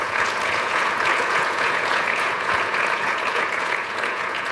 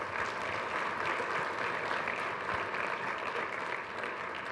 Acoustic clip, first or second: second